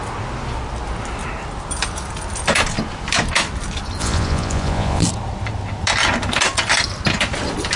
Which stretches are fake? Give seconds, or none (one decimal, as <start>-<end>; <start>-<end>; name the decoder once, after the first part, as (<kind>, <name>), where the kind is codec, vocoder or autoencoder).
4.0-5.0 (vocoder, Vocos)